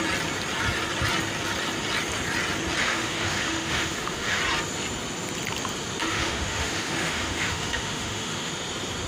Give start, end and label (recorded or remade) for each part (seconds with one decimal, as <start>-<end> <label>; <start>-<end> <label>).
0.0-2.8 recorded; 2.8-4.4 remade; 4.4-6.0 recorded; 6.0-8.5 remade; 8.5-9.1 recorded